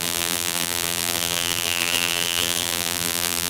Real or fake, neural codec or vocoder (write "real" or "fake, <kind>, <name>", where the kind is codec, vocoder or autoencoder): fake, vocoder, BigVGAN v2